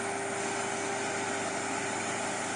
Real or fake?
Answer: real